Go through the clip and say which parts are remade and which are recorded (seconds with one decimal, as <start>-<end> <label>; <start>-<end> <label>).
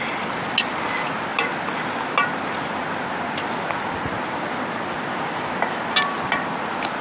0.0-7.0 recorded